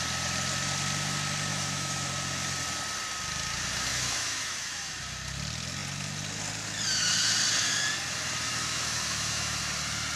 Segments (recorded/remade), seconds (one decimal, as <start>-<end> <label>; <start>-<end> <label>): 0.0-1.5 recorded; 1.5-2.1 remade; 2.1-3.9 recorded; 3.9-4.9 remade; 4.9-8.5 recorded; 8.5-9.6 remade; 9.6-10.2 recorded